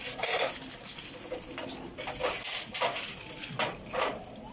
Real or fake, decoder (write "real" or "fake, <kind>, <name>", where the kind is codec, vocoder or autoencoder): real